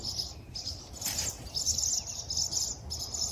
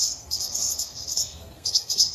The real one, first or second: first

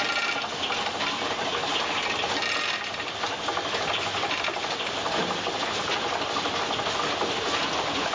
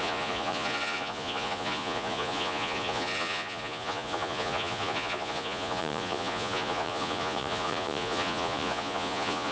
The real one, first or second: first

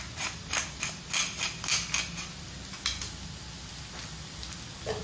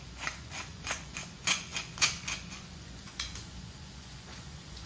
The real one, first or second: first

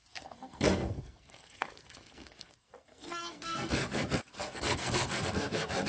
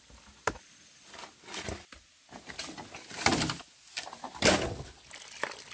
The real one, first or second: second